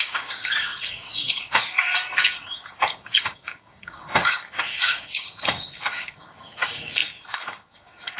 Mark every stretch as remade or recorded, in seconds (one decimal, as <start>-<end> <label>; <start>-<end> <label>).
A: 0.0-8.2 remade

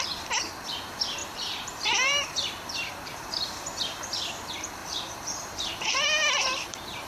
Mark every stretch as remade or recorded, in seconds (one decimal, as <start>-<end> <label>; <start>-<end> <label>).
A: 0.0-1.2 recorded; 1.2-2.9 remade; 2.9-4.8 recorded; 4.8-7.1 remade

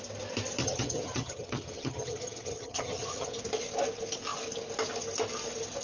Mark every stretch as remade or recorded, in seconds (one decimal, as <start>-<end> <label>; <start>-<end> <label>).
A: 0.0-0.6 recorded; 0.6-3.4 remade; 3.4-5.8 recorded